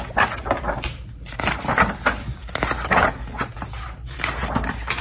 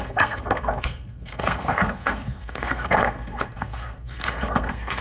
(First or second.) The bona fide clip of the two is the first